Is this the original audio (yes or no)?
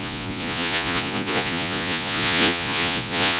no